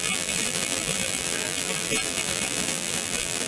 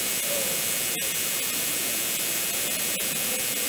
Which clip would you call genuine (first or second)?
second